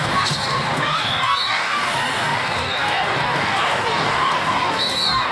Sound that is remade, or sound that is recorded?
remade